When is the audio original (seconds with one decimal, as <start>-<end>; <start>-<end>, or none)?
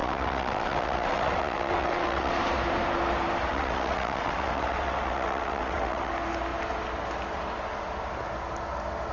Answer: 2.3-3.5; 6.1-9.1